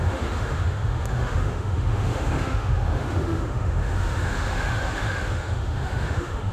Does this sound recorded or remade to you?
remade